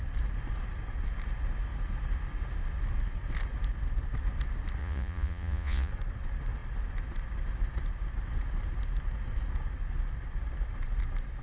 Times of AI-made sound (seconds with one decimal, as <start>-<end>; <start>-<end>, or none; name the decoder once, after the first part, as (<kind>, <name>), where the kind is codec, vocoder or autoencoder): 4.8-5.9 (vocoder, Vocos)